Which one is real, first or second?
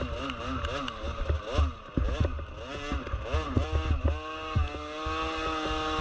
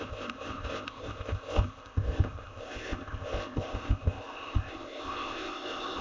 first